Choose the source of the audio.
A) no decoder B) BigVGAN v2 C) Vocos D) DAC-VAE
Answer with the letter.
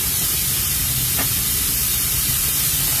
B